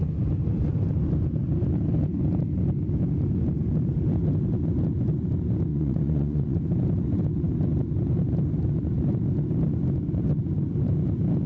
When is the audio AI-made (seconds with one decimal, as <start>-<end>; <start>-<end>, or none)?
5.7-6.6